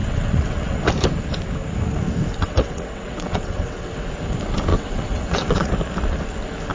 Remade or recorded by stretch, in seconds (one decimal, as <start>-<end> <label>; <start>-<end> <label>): 0.0-0.8 remade; 0.8-2.3 recorded; 2.3-4.1 remade; 4.1-4.7 recorded; 4.7-5.7 remade; 5.7-6.7 recorded